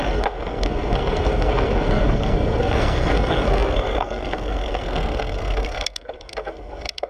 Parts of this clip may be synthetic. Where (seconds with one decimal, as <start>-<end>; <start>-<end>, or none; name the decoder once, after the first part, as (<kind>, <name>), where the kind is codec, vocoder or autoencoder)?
0.0-7.1 (codec, SNAC)